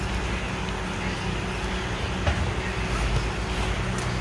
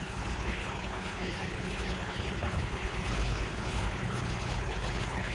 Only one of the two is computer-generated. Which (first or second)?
second